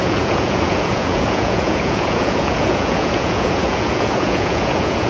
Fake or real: fake